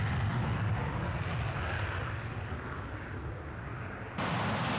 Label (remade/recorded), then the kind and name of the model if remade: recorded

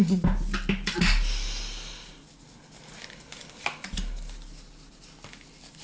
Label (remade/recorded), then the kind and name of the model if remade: recorded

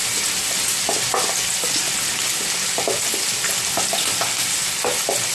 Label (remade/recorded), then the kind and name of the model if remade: recorded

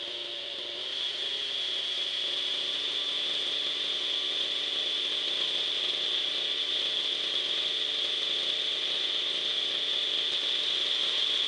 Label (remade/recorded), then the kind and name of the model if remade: recorded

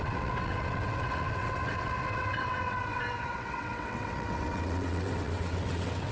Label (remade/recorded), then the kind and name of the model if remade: remade, vocoder, WaveNeXt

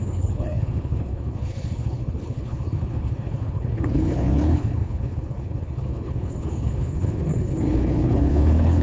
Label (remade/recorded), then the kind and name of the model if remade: remade, codec, HILCodec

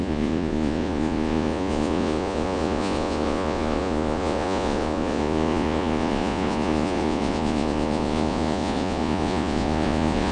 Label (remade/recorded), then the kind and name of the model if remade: remade, vocoder, Vocos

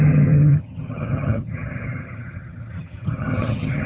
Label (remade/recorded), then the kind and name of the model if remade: remade, vocoder, HiFi-GAN